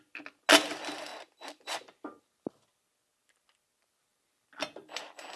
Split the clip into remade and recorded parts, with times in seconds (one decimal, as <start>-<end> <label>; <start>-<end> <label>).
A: 0.0-5.4 recorded